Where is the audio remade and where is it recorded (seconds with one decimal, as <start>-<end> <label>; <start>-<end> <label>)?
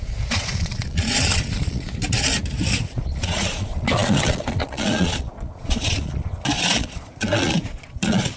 0.0-1.9 remade; 1.9-3.0 recorded; 3.0-8.4 remade